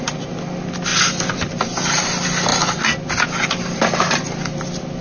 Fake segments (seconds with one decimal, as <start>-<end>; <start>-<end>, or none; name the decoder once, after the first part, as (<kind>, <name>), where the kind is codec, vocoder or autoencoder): none